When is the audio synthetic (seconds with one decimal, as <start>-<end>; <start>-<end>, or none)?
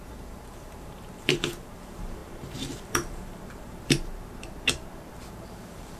0.0-6.0